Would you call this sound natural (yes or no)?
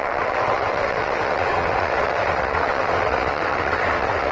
no